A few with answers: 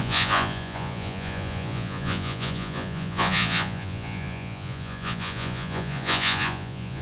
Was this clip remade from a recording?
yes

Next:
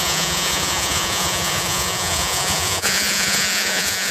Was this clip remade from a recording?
yes